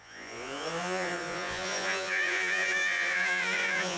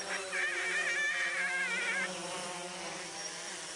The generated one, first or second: first